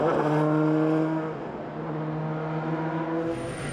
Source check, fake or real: real